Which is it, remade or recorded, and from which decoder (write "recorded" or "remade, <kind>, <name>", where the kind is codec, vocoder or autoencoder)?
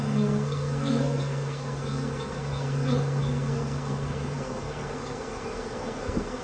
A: remade, codec, SNAC